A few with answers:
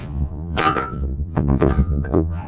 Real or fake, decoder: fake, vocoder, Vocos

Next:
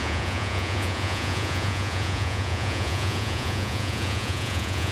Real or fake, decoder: fake, vocoder, Vocos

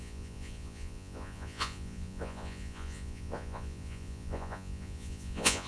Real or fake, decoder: fake, vocoder, Vocos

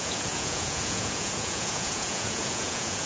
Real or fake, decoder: fake, vocoder, Vocos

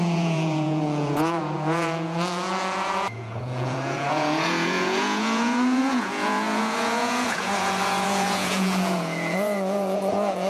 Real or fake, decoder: fake, vocoder, Vocos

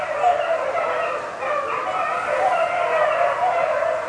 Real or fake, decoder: real